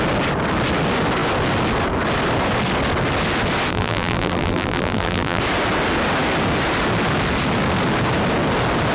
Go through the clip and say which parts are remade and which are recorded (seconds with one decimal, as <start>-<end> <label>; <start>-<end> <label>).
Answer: 0.0-3.7 recorded; 3.7-5.4 remade; 5.4-8.9 recorded